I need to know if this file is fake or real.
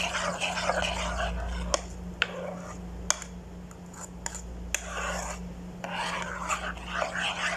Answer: real